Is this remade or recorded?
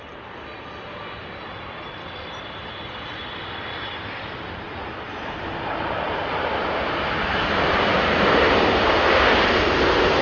remade